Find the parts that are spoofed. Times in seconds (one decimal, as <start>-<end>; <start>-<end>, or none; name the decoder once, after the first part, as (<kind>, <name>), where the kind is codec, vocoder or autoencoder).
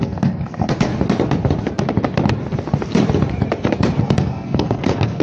0.0-0.9 (codec, SNAC); 4.0-5.2